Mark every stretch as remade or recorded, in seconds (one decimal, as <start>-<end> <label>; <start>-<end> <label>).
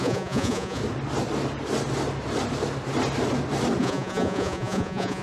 0.0-0.8 remade; 0.8-3.8 recorded; 3.8-5.2 remade